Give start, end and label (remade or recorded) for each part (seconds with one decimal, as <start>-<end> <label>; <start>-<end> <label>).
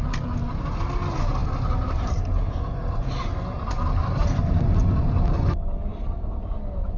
0.0-1.4 recorded; 1.4-2.2 remade; 2.2-7.0 recorded